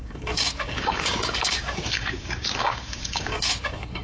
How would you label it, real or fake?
fake